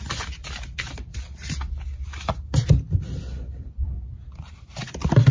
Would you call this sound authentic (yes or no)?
yes